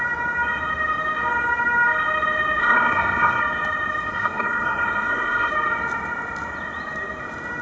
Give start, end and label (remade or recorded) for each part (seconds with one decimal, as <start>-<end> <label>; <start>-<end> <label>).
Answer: 0.0-2.6 recorded; 2.6-3.4 remade; 3.4-4.1 recorded; 4.1-5.5 remade; 5.5-7.6 recorded